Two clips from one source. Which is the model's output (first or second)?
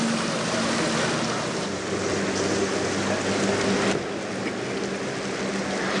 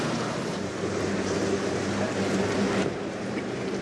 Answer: second